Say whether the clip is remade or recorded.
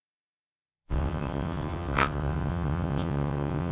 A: remade